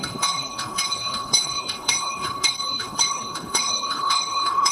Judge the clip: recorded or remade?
remade